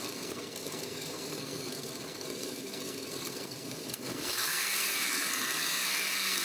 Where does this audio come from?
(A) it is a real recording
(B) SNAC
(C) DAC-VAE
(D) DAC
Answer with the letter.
B